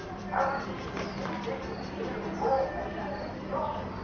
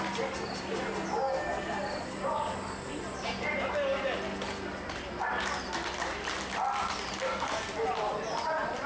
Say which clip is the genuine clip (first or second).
second